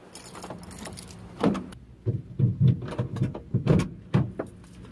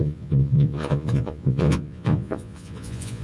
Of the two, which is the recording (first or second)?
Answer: first